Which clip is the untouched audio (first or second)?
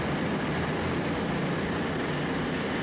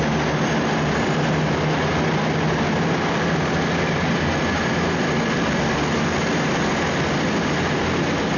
second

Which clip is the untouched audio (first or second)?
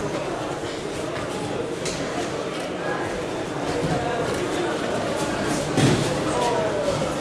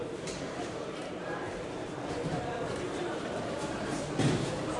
first